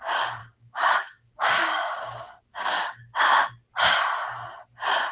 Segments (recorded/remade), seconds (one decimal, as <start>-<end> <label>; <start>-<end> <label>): 0.0-0.4 recorded; 0.4-3.5 remade; 3.5-5.1 recorded